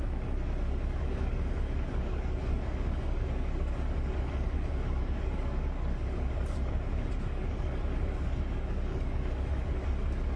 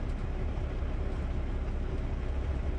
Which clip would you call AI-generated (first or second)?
first